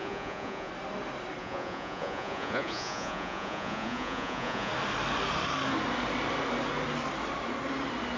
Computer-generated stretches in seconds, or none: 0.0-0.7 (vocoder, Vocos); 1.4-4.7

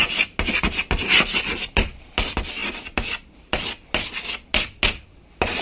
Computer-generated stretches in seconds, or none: none

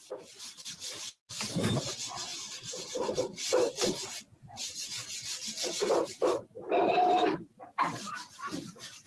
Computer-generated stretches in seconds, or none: 2.3-4.2 (vocoder, BigVGAN v2)

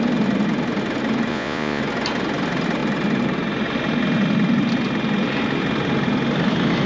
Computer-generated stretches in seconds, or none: 1.3-1.8 (vocoder, Vocos)

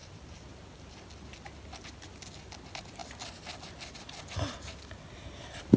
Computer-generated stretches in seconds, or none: 0.0-0.5 (vocoder, BigVGAN v2)